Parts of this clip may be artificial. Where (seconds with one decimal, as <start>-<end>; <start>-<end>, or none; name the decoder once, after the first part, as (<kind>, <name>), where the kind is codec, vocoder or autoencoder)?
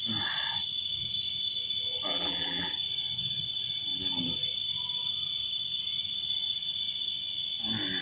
2.1-2.7 (vocoder, BigVGAN v2)